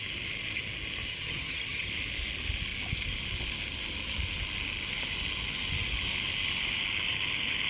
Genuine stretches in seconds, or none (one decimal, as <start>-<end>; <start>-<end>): 0.0-1.1; 1.9-7.7